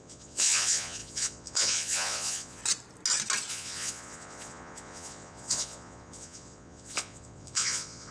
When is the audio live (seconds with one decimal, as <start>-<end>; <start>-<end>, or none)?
2.6-3.5